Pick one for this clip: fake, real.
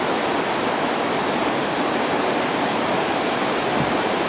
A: real